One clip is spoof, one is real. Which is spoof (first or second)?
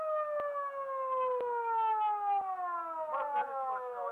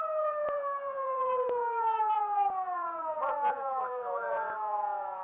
second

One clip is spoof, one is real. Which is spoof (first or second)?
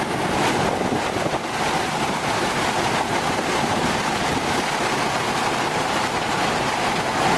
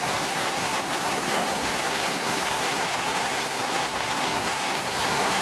second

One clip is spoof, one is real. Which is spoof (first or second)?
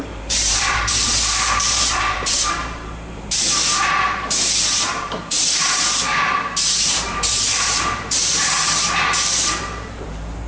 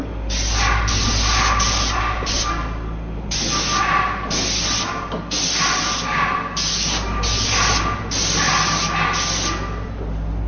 first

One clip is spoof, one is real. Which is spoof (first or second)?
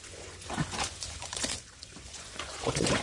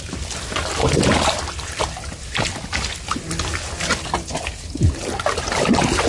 first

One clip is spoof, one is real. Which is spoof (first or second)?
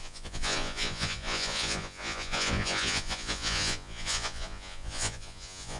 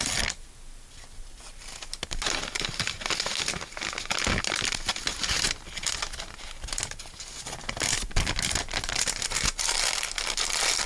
first